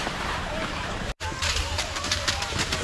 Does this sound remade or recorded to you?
remade